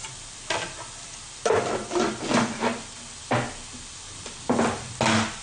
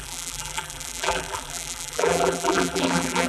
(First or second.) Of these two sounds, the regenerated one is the second